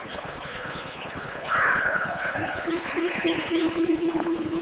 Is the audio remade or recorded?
remade